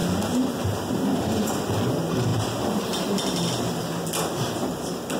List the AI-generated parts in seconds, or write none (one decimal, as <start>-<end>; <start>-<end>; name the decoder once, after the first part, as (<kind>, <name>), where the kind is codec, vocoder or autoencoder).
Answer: 0.0-1.0 (vocoder, BigVGAN v2); 2.3-3.8